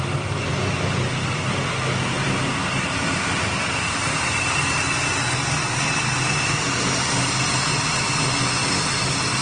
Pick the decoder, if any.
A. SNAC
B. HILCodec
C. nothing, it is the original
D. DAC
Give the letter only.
C